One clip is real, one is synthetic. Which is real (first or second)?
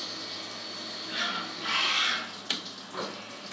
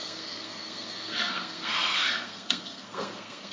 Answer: first